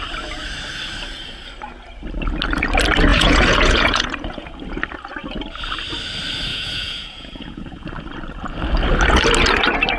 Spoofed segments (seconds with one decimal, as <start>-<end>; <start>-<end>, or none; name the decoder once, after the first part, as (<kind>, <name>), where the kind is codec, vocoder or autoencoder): 3.1-4.5 (vocoder, Vocos); 6.5-7.9